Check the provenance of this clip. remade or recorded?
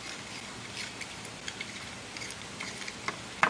recorded